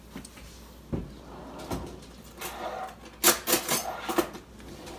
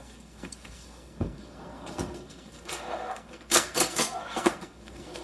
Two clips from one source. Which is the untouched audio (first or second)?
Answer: first